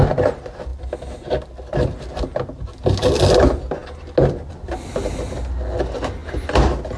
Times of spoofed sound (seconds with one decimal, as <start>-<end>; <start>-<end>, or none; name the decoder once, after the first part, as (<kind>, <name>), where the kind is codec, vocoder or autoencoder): none